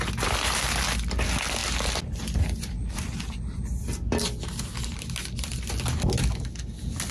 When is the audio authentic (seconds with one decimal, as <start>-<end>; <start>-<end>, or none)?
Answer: 0.0-7.1